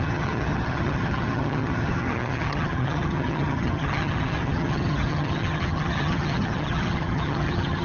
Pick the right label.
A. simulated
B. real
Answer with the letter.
A